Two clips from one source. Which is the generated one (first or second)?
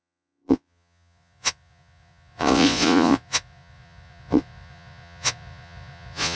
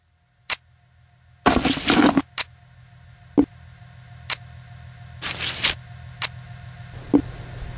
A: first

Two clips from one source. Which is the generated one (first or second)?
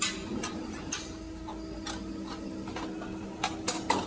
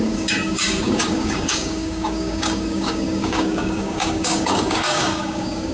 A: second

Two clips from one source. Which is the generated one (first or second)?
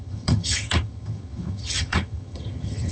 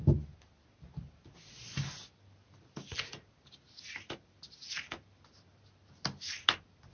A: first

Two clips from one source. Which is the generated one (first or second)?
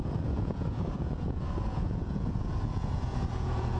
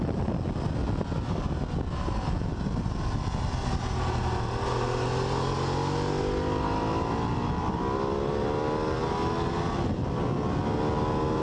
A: first